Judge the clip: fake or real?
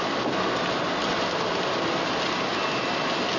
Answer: real